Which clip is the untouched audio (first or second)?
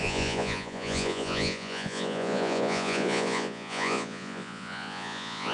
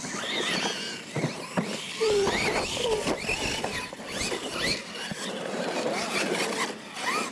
second